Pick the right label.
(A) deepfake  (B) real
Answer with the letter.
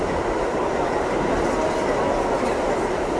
B